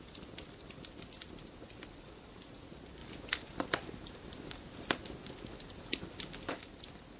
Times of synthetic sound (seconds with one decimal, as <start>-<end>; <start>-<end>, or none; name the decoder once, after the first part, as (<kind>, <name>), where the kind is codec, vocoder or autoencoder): none